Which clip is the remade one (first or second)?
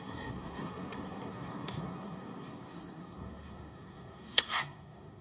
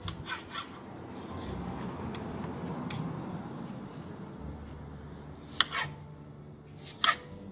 first